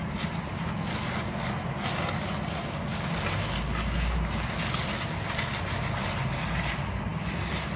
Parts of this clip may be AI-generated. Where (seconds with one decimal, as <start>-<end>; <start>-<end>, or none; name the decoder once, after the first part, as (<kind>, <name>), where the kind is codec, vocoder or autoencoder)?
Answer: none